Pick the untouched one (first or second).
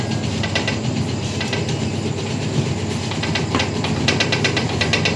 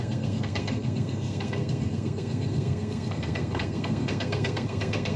first